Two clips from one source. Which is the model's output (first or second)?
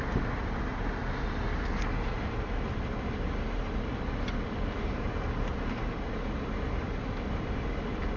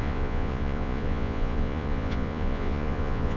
second